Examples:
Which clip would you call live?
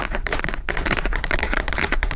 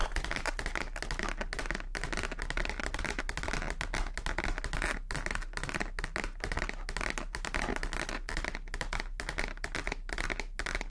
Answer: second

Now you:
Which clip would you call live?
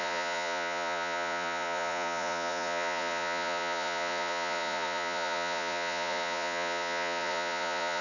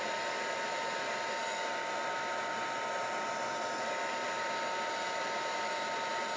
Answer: second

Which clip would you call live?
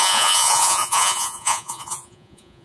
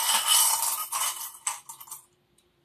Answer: second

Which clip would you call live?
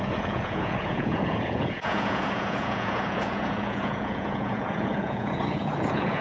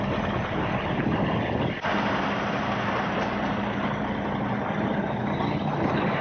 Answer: second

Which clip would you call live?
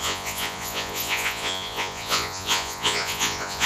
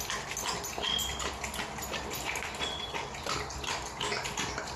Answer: second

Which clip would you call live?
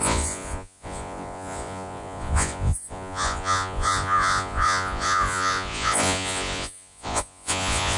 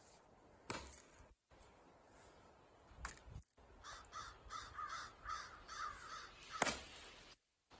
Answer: second